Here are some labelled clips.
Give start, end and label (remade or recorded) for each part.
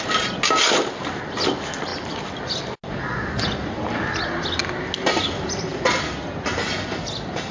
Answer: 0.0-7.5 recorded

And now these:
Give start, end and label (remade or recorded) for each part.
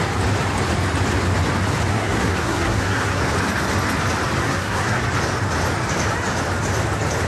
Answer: 0.0-1.9 recorded; 1.9-3.2 remade; 3.2-4.4 recorded; 4.4-5.0 remade; 5.0-7.3 recorded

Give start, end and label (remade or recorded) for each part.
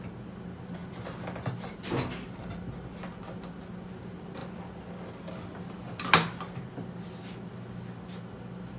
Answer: 0.0-8.8 recorded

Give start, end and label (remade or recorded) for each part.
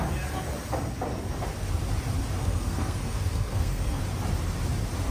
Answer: 0.0-2.4 recorded; 2.4-4.0 remade; 4.0-5.1 recorded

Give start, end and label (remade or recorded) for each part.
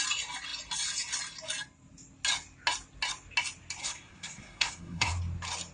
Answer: 0.0-3.8 recorded; 3.8-5.2 remade; 5.2-5.7 recorded